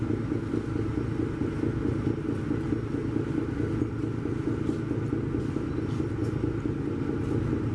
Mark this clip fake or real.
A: real